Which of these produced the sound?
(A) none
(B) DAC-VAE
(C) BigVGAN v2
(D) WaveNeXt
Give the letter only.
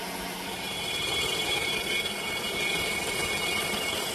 A